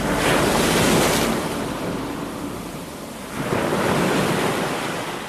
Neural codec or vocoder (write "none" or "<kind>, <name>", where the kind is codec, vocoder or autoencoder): none